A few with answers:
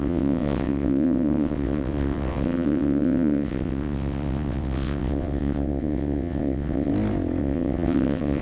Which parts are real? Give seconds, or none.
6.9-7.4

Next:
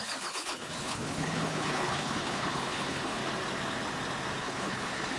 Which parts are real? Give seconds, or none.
3.2-4.4

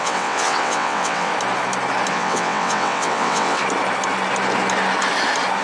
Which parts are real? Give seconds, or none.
1.3-2.1; 3.6-5.6

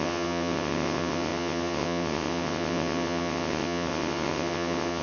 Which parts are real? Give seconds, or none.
none

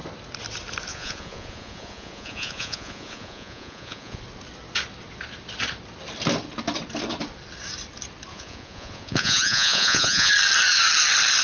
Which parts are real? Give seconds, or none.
0.0-0.9; 4.2-8.3; 10.3-11.4

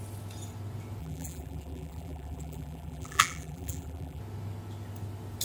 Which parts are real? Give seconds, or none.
0.0-1.0; 4.2-5.4

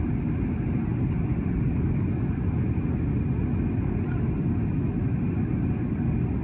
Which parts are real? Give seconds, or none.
0.0-6.4

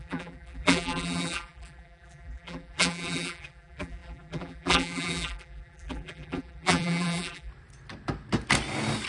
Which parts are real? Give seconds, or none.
7.5-9.1